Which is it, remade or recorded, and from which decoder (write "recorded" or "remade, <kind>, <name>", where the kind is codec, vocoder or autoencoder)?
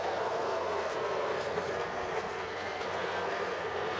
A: remade, codec, SNAC